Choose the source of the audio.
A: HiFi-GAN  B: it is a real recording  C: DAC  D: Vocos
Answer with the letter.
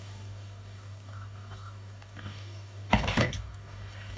C